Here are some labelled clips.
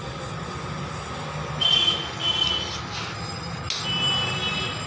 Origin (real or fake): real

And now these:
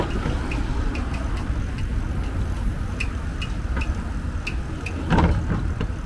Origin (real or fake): real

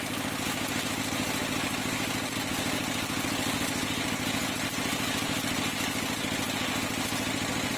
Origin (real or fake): real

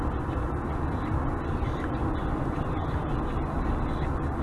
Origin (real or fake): real